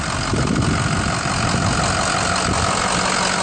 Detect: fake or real real